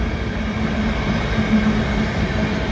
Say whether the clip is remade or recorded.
recorded